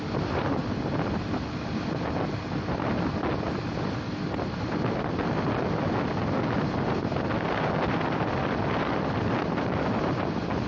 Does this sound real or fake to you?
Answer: real